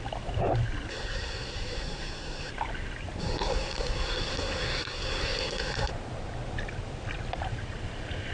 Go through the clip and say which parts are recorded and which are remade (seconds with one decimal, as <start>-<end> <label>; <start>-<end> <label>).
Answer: 0.0-0.9 recorded; 0.9-2.5 remade; 2.5-3.2 recorded; 3.2-5.9 remade; 5.9-8.3 recorded